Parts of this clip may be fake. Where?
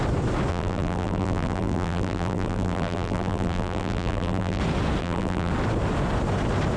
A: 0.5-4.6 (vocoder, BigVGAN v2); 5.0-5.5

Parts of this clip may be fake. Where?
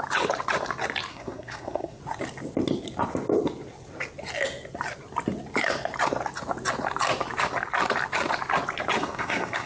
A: 1.1-2.0 (codec, SNAC); 9.0-9.7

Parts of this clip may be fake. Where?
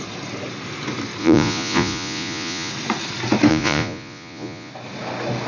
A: 1.2-2.7 (vocoder, Vocos); 3.5-4.7